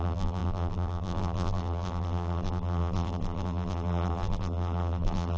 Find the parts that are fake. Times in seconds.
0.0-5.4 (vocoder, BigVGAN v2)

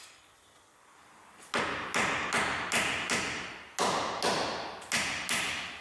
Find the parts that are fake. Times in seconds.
none

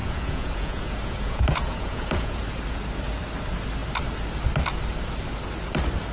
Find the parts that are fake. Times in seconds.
0.0-2.4 (vocoder, Vocos)